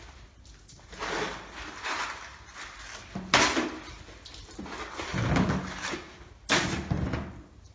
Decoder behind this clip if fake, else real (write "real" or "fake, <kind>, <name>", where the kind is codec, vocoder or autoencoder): real